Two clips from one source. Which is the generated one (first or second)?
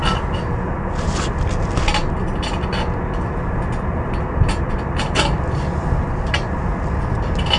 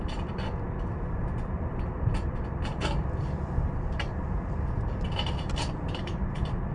second